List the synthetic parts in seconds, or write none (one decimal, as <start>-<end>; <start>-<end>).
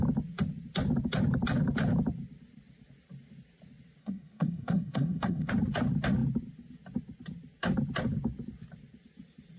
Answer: 4.0-5.5